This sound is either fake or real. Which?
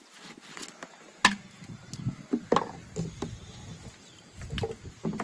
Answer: real